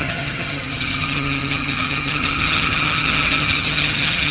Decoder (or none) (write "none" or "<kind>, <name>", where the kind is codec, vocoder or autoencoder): vocoder, HiFi-GAN